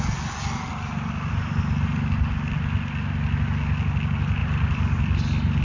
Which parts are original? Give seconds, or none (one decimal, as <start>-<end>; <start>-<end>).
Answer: 0.0-4.4; 5.0-5.6